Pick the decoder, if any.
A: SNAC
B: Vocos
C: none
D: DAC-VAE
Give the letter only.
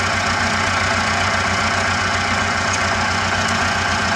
B